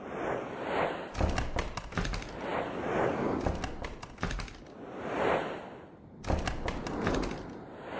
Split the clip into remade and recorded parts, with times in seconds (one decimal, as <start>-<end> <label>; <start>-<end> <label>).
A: 0.0-8.0 recorded